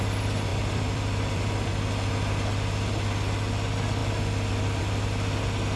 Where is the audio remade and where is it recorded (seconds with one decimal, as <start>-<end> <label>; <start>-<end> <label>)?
0.0-0.5 recorded; 0.5-1.7 remade; 1.7-5.8 recorded